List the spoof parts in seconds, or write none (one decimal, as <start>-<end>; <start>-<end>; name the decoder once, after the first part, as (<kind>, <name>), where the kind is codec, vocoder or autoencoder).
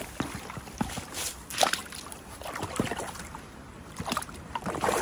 0.0-5.0 (vocoder, BigVGAN v2)